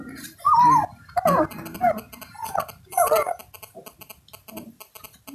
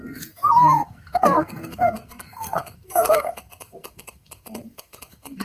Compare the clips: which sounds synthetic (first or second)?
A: second